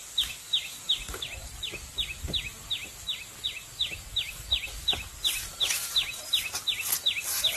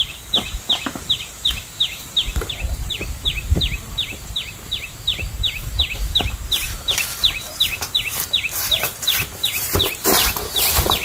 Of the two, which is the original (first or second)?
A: first